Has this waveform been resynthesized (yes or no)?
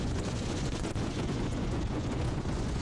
yes